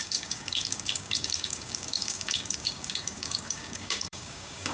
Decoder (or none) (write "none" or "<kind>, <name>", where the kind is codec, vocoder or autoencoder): codec, DAC